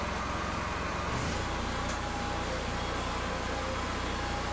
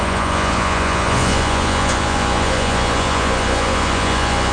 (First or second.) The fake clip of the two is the second